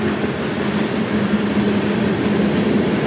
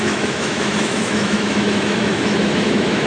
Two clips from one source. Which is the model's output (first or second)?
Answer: second